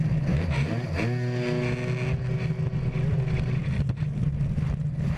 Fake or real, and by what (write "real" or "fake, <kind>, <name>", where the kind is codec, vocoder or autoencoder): real